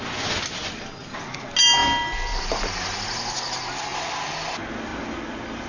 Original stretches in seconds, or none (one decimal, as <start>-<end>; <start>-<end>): 0.0-5.7